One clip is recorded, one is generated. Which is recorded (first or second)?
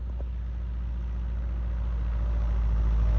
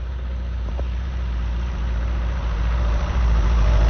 first